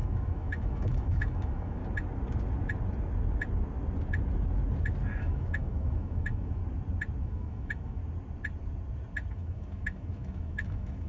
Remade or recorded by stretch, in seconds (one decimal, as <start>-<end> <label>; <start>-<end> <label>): 0.0-1.8 remade; 1.8-5.2 recorded; 5.2-6.6 remade; 6.6-7.2 recorded; 7.2-8.0 remade; 8.0-9.3 recorded; 9.3-11.1 remade

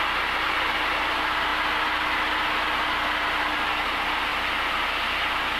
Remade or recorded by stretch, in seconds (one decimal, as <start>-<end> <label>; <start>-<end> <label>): 0.0-5.6 recorded

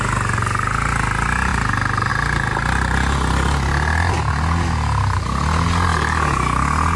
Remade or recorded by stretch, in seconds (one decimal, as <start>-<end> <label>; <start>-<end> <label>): 0.0-7.0 recorded